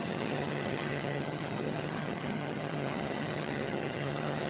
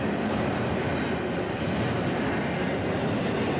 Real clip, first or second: second